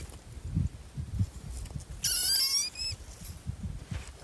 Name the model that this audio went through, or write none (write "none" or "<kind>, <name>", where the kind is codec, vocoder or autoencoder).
none